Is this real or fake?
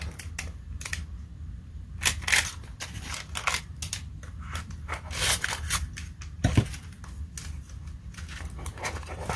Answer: real